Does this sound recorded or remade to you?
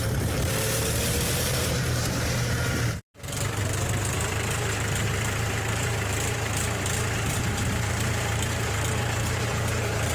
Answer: remade